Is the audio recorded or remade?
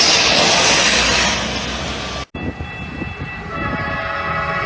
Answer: recorded